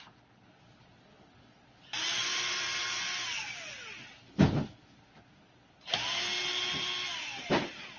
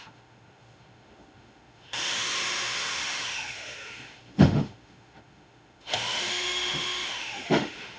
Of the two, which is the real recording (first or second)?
first